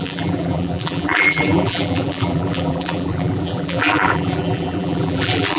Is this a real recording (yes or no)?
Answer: no